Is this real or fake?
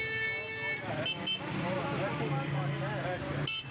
real